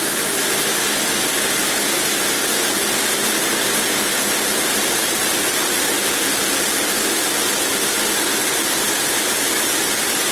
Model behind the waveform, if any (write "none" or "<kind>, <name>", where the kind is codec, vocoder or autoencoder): none